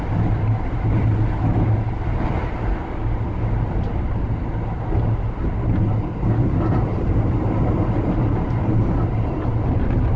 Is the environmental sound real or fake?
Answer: real